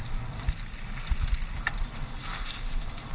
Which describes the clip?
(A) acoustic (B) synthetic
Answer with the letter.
A